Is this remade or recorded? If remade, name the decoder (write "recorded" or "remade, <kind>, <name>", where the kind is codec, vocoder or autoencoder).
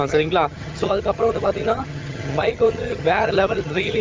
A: remade, vocoder, HiFi-GAN